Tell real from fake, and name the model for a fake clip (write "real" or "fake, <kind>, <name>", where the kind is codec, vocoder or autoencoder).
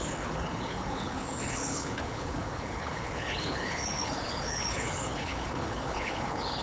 fake, codec, HILCodec